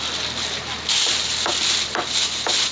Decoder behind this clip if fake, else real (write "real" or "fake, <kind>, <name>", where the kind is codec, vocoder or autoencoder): real